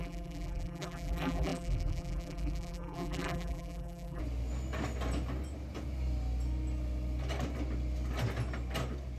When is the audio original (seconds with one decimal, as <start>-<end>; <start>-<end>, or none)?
4.2-9.2